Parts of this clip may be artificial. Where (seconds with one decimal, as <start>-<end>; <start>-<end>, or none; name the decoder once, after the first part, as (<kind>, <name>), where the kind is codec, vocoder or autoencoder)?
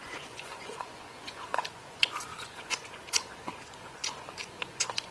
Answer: 0.0-5.1 (vocoder, Vocos)